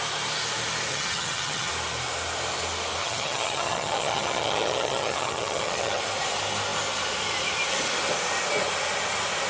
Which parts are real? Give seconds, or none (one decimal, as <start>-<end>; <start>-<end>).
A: 0.0-0.9; 1.7-3.0; 6.0-9.5